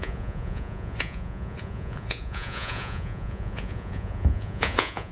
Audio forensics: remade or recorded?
remade